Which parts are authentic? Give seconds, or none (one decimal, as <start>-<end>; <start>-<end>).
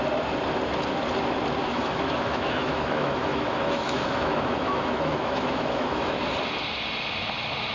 0.0-1.6; 6.2-7.7